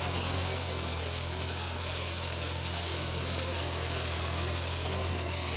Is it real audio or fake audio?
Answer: fake